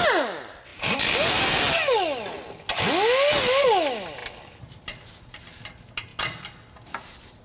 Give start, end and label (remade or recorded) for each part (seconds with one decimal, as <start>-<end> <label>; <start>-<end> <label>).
0.0-7.4 recorded